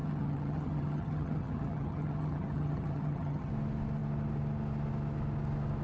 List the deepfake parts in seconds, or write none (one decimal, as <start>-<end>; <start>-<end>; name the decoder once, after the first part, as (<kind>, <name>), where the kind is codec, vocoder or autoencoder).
0.0-3.5 (vocoder, HiFi-GAN)